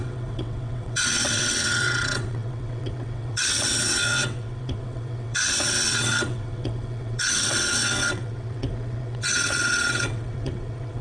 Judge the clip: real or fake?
fake